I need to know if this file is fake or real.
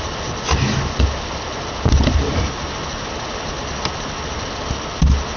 real